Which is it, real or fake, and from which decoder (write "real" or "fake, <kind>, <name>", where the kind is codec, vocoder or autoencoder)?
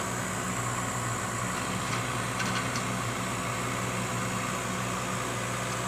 real